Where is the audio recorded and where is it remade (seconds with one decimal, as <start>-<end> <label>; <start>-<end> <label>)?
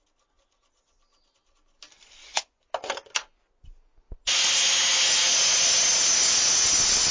0.0-2.2 recorded; 2.2-2.7 remade; 2.7-7.1 recorded